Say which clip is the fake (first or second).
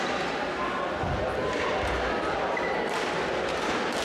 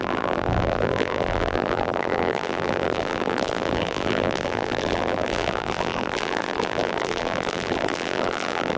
second